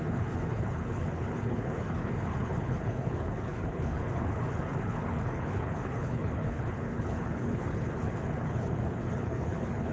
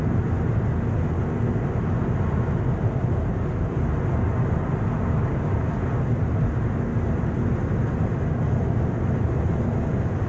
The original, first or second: second